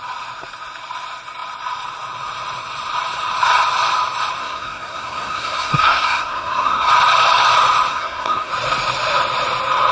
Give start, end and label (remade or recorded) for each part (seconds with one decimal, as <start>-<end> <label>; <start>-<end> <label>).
0.0-4.4 recorded; 4.4-6.9 remade; 6.9-7.9 recorded; 7.9-8.5 remade; 8.5-9.9 recorded